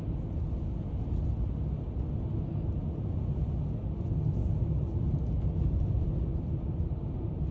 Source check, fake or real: real